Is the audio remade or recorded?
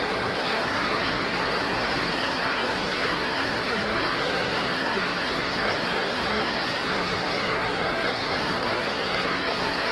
remade